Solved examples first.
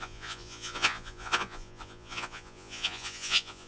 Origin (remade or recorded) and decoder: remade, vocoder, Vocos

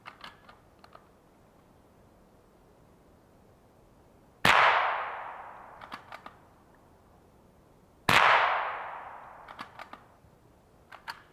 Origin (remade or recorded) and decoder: recorded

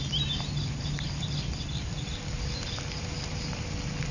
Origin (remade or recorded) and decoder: recorded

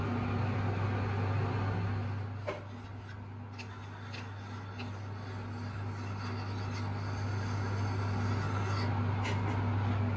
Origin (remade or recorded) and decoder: recorded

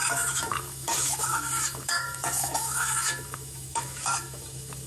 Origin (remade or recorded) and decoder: remade, autoencoder, DAC-VAE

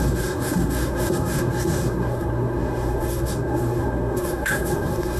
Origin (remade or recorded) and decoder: remade, codec, SNAC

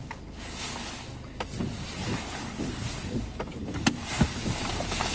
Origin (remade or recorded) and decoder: recorded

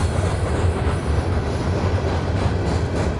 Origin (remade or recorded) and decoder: recorded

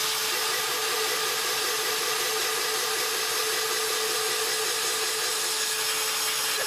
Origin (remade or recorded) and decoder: recorded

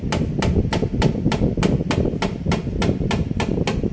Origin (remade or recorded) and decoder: recorded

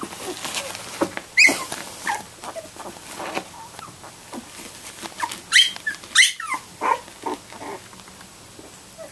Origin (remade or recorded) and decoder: recorded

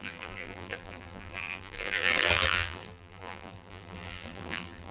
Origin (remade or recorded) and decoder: remade, vocoder, BigVGAN v2